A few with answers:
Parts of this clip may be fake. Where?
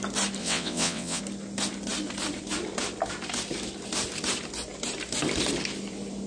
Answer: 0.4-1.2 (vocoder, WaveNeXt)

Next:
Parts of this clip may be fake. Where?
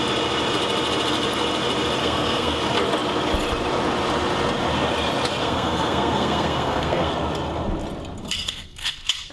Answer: 2.0-2.6 (codec, SNAC); 5.4-7.1; 8.2-9.3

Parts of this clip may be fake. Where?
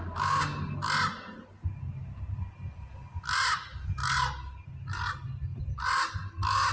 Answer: none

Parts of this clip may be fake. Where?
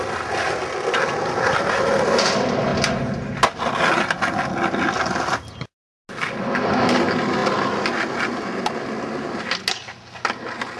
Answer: none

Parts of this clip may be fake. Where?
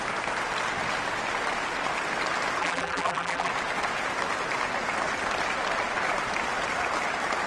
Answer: 2.6-3.5 (vocoder, BigVGAN v2)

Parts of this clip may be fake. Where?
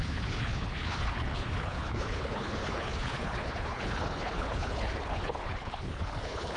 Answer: 0.0-6.6 (codec, HILCodec)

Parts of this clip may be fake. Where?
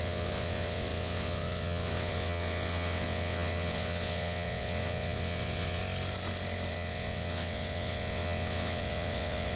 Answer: 0.0-5.8 (vocoder, WaveNeXt); 6.7-9.6